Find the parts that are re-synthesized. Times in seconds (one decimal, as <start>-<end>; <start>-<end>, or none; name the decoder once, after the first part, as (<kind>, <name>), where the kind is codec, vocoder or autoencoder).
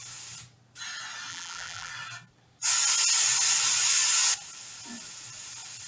1.3-1.9 (vocoder, BigVGAN v2)